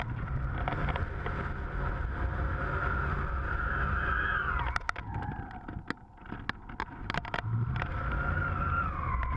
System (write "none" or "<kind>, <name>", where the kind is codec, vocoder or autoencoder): none